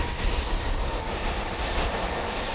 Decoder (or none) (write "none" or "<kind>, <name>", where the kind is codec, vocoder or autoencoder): vocoder, BigVGAN v2